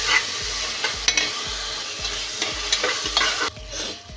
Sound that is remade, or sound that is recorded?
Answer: recorded